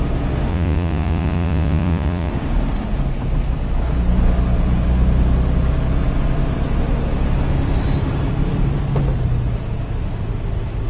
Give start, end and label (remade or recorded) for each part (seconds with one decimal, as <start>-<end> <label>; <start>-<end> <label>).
0.0-0.5 recorded; 0.5-2.3 remade; 2.3-10.9 recorded